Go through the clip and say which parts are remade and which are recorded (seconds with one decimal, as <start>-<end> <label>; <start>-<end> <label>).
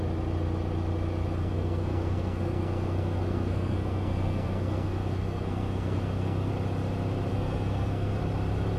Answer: 0.0-1.4 recorded; 1.4-6.5 remade; 6.5-7.3 recorded; 7.3-8.2 remade; 8.2-8.8 recorded